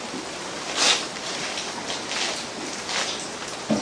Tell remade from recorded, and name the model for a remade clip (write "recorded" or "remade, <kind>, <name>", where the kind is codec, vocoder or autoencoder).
recorded